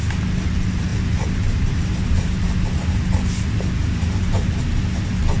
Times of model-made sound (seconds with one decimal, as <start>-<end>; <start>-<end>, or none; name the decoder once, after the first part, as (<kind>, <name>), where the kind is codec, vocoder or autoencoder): 0.9-2.7 (vocoder, BigVGAN v2)